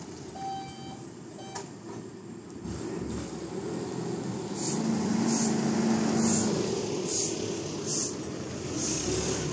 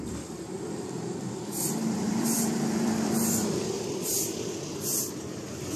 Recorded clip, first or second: first